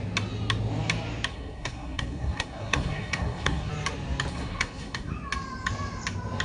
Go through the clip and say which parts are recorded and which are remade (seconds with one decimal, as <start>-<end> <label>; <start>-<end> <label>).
0.0-1.3 recorded; 1.3-3.7 remade; 3.7-4.3 recorded; 4.3-5.1 remade; 5.1-6.4 recorded